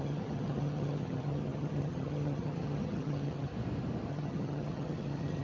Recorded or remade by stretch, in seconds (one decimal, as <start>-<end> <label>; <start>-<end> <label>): 0.0-3.5 remade; 3.5-4.1 recorded; 4.1-5.4 remade